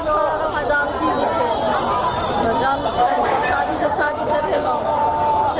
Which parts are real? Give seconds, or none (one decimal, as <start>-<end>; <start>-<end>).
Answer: 0.0-3.0; 4.9-5.6